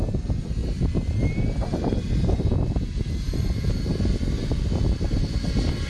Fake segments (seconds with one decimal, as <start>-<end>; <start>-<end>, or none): 0.6-4.1